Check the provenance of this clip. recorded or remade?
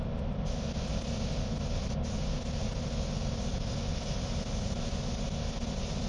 recorded